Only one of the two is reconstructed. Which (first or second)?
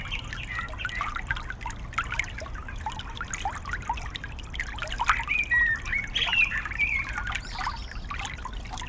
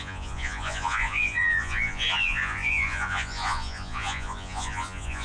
second